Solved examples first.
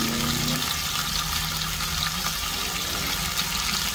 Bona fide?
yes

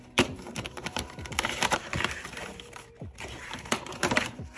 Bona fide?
no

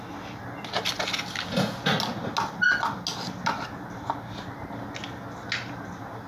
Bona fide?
yes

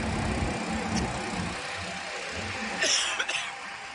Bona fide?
yes